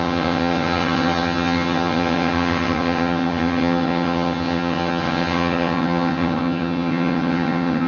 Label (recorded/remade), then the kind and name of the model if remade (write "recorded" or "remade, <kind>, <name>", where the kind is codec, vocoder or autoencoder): remade, vocoder, HiFi-GAN